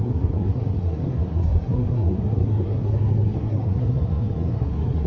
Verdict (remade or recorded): remade